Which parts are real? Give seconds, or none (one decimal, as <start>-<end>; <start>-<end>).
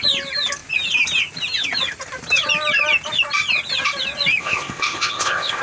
0.0-4.4